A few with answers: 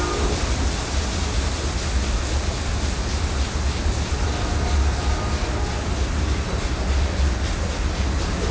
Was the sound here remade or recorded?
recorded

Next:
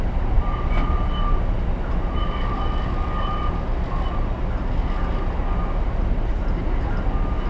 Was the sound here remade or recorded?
recorded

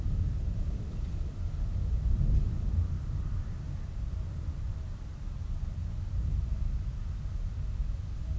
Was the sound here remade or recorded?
recorded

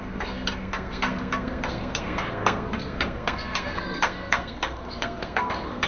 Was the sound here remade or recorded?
remade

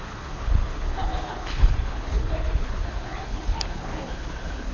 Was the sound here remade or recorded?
remade